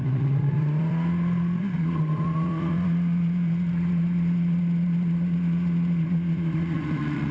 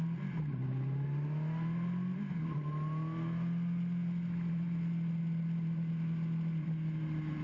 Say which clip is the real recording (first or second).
second